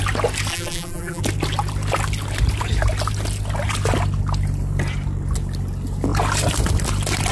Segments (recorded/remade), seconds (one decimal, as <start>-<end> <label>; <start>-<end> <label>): 0.0-0.5 recorded; 0.5-1.2 remade; 1.2-7.3 recorded